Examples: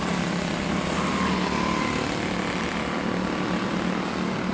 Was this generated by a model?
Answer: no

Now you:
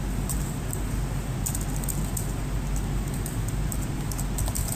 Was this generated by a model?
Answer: no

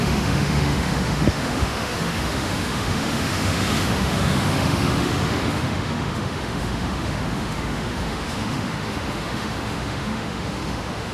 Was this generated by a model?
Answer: yes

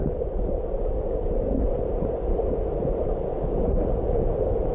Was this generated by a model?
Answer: no